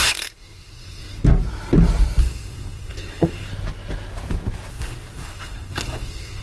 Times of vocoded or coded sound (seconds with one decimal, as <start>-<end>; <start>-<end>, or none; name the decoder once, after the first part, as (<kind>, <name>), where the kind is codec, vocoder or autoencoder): 0.0-1.2 (codec, SNAC); 2.2-3.5; 4.7-6.4